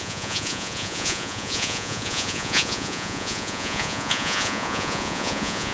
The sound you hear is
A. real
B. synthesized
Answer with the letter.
B